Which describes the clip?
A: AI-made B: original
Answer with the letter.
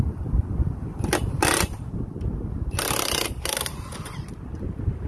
A